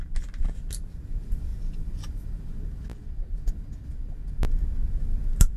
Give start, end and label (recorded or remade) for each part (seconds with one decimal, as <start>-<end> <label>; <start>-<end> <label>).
0.0-5.6 recorded